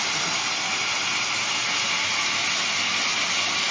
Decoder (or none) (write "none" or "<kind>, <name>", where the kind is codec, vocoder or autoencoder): none